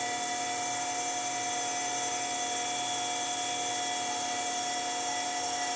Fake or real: real